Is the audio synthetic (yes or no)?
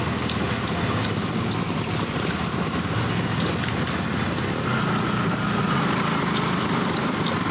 no